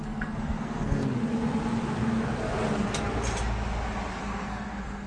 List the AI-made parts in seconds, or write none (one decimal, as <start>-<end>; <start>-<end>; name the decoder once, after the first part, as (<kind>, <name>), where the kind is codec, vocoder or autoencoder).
0.0-1.2 (codec, SNAC); 4.2-5.1